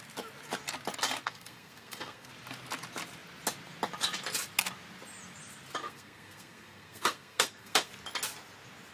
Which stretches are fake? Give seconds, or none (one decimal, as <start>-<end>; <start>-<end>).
1.2-2.3; 5.8-7.9